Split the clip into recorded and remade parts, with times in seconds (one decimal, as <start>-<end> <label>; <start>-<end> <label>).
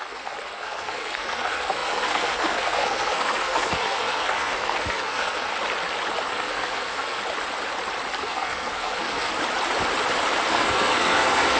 0.0-5.5 remade; 5.5-6.3 recorded; 6.3-7.2 remade; 7.2-8.2 recorded; 8.2-9.3 remade; 9.3-10.5 recorded; 10.5-11.6 remade